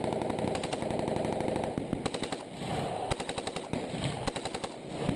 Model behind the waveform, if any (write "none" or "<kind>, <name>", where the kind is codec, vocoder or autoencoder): none